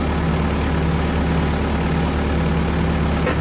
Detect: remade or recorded recorded